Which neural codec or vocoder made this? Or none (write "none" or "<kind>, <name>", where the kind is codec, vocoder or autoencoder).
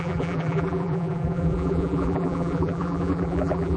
vocoder, BigVGAN v2